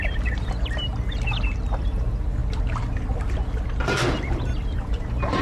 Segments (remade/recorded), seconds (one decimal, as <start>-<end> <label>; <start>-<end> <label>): 0.0-0.9 remade; 0.9-1.8 recorded; 1.8-2.4 remade; 2.4-4.1 recorded; 4.1-5.4 remade